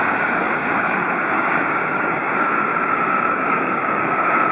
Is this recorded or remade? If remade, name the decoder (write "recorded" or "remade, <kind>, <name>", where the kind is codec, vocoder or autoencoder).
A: remade, codec, DAC